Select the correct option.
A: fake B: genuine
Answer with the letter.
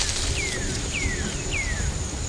B